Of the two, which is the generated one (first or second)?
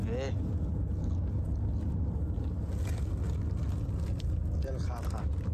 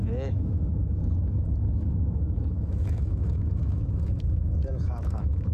second